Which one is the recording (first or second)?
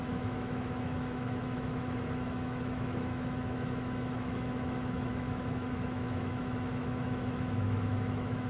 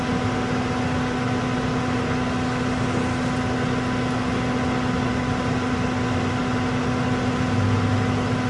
second